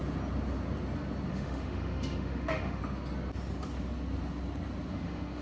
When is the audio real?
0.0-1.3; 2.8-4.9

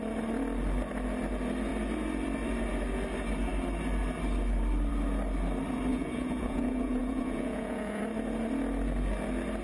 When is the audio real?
0.0-5.9; 8.0-9.6

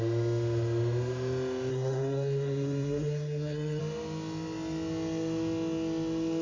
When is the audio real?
0.0-1.7; 3.8-6.4

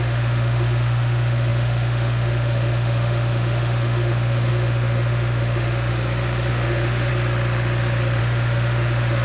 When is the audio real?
5.9-6.5; 7.1-8.2

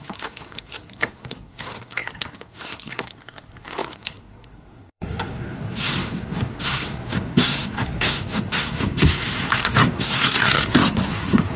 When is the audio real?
none

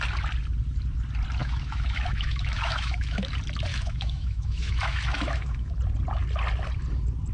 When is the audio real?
0.0-1.4; 3.3-3.7; 5.7-7.3

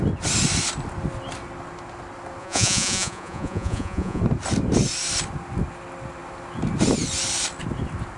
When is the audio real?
0.0-2.4; 4.2-8.2

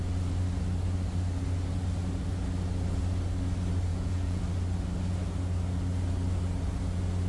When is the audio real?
0.0-3.9; 4.4-7.3